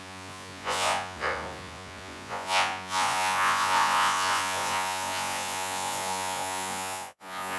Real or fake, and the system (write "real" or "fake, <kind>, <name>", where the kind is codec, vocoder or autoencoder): fake, vocoder, Vocos